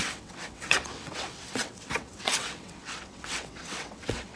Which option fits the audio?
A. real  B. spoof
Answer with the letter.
B